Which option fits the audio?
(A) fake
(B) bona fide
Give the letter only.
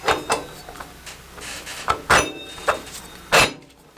B